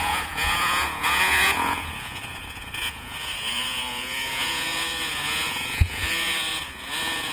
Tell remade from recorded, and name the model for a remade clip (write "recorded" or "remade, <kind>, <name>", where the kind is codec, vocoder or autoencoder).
remade, vocoder, Vocos